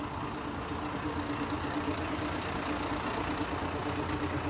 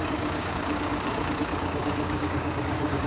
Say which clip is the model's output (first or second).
second